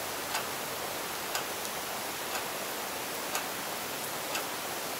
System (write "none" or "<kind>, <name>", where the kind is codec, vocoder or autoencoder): none